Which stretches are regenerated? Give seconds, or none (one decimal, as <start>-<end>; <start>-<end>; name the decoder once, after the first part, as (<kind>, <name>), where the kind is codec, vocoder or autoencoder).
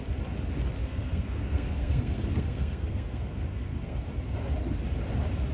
0.8-4.1 (codec, SNAC)